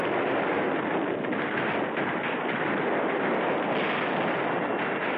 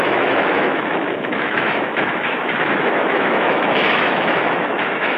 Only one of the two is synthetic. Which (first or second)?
second